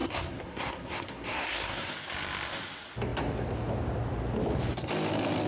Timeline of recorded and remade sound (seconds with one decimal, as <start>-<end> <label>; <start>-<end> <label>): 0.0-1.9 remade; 1.9-5.5 recorded